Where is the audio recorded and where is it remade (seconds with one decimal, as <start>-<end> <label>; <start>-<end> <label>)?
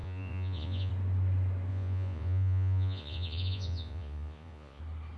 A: 0.0-0.9 remade; 0.9-1.7 recorded; 1.7-4.8 remade; 4.8-5.2 recorded